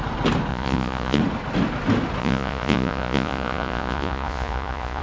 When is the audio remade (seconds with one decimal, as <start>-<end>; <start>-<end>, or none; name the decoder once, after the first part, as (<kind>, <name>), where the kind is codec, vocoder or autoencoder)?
0.5-1.2 (vocoder, Vocos); 2.2-5.0